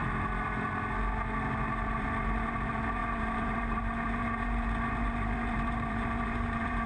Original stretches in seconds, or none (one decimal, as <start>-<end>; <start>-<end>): 0.0-1.8